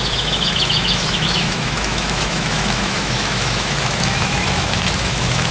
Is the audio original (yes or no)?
no